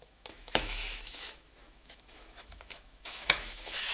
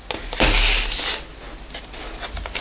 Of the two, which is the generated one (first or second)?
first